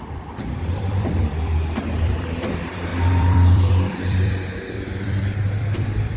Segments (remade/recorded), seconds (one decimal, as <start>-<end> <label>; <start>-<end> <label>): 0.0-6.2 remade